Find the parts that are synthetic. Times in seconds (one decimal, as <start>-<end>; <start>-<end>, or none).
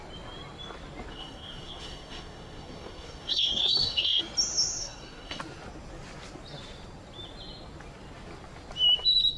1.1-4.2; 4.8-5.4